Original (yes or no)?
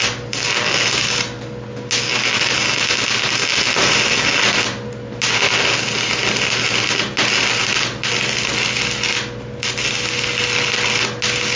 yes